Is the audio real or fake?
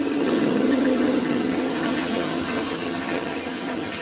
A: fake